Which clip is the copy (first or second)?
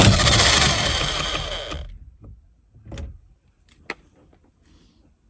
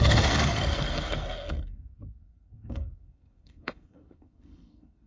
second